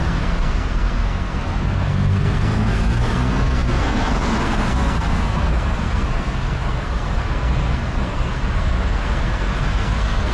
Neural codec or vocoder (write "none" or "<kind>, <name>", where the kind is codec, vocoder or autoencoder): codec, SNAC